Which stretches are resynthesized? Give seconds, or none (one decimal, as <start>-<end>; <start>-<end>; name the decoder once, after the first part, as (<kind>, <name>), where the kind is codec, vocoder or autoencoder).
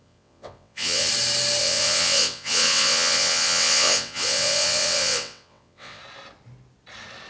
0.0-1.1 (vocoder, WaveNeXt); 1.6-6.0